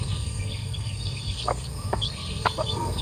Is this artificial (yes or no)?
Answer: yes